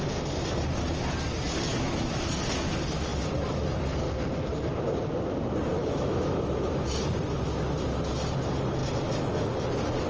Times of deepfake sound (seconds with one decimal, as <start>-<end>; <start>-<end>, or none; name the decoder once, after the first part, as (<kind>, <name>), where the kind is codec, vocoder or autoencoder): 1.7-2.3 (autoencoder, DAC-VAE); 5.8-6.9

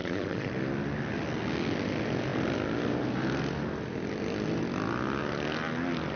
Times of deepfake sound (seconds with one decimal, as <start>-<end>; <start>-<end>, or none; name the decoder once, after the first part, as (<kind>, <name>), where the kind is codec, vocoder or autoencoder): 0.0-0.5 (vocoder, Vocos)

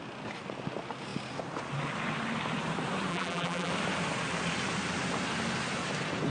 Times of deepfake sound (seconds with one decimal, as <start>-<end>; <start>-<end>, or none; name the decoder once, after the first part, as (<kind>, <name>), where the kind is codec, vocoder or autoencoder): 3.1-3.7 (vocoder, BigVGAN v2)

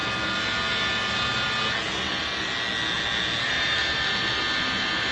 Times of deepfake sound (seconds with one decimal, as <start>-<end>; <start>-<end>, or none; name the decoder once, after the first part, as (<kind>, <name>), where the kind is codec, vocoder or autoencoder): none

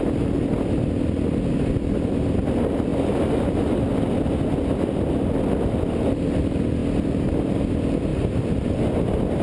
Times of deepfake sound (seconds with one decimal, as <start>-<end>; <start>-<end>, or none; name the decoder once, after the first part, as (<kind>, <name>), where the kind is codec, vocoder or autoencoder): none